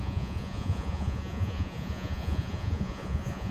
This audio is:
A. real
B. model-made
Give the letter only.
B